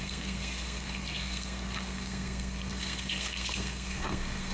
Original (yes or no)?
no